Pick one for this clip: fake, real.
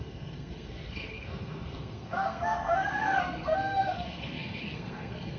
fake